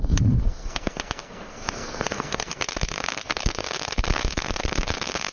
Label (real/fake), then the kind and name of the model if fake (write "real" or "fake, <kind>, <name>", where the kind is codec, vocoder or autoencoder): fake, codec, SNAC